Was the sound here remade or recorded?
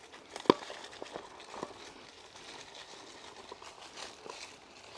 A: recorded